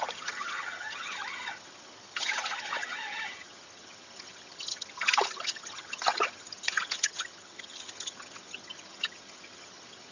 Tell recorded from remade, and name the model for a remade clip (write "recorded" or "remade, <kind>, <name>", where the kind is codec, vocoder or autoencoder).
remade, vocoder, HiFi-GAN